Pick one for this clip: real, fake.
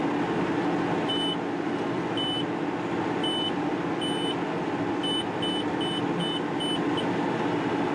real